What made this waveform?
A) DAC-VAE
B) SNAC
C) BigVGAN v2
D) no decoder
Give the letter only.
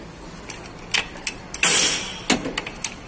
D